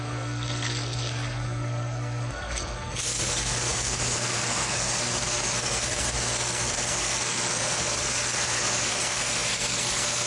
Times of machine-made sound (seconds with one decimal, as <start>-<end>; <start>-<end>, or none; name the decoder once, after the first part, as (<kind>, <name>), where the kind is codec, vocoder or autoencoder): 0.0-10.3 (codec, SNAC)